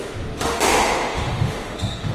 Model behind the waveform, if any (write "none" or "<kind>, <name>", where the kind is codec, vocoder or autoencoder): autoencoder, DAC-VAE